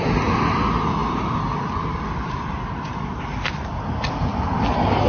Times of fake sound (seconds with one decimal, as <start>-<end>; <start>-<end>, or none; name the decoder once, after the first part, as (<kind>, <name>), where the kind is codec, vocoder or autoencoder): 1.0-3.8 (vocoder, BigVGAN v2)